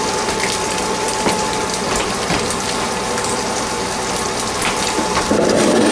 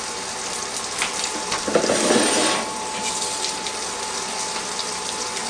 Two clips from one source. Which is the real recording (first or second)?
second